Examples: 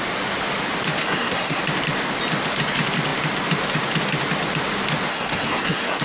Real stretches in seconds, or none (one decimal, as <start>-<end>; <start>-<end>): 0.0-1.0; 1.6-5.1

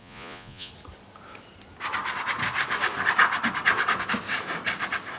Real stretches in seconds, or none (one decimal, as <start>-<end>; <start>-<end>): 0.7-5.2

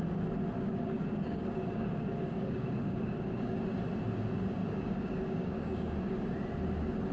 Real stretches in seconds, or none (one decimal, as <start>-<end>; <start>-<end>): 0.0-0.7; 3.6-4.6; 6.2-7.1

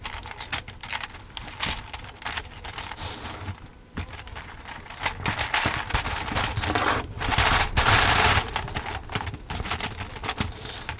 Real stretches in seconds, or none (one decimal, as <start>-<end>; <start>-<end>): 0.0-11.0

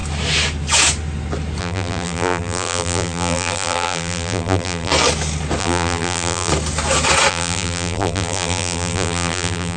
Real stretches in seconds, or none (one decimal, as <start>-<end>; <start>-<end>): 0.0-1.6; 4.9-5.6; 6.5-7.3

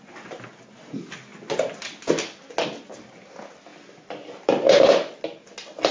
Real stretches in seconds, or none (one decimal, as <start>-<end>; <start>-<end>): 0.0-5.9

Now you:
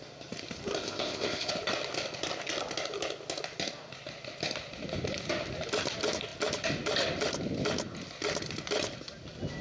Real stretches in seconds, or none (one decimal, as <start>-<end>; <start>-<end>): 0.0-0.8; 1.5-9.6